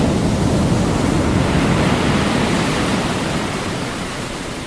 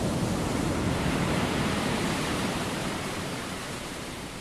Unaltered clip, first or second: first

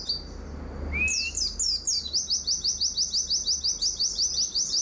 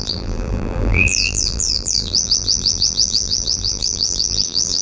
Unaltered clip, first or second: first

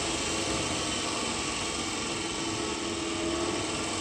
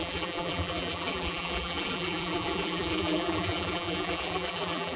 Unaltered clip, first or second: first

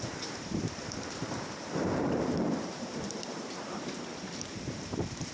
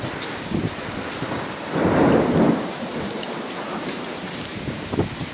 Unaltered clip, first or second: second